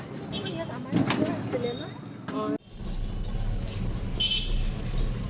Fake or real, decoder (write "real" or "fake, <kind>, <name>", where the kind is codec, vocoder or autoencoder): real